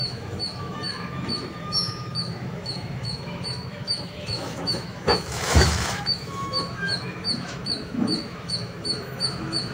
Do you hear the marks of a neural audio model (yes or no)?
yes